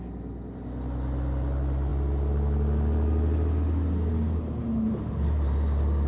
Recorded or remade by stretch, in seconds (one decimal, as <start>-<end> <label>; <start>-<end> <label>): 0.0-6.1 recorded